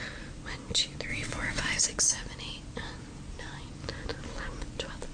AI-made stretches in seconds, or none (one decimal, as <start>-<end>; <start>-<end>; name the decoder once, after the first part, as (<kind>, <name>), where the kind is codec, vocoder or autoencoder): 1.1-1.8 (vocoder, WaveNeXt)